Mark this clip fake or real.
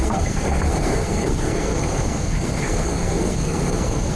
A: fake